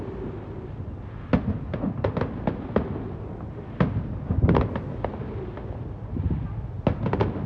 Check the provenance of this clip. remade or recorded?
recorded